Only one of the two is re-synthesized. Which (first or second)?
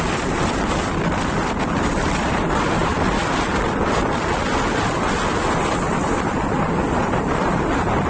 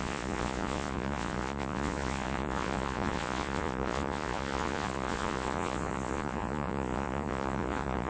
second